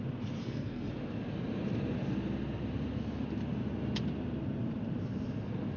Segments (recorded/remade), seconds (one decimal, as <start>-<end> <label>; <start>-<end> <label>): 0.0-0.4 recorded; 0.4-0.9 remade; 0.9-5.8 recorded